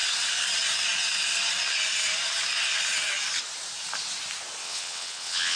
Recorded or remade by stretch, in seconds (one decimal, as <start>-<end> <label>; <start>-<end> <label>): 0.0-4.6 recorded; 4.6-5.6 remade